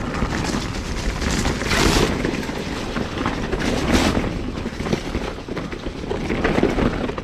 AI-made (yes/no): no